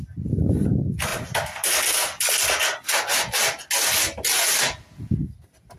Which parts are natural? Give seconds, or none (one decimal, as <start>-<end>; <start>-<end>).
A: 0.0-5.8